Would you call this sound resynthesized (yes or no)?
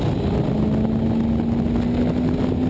no